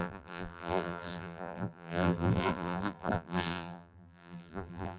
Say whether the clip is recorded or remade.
remade